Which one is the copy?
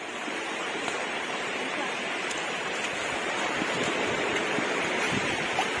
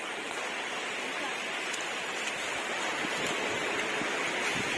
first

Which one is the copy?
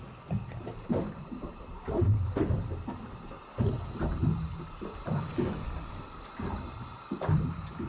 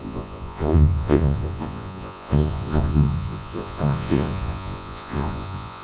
second